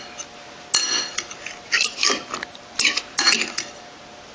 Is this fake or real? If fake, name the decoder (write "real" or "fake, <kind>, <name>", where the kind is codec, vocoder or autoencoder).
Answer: real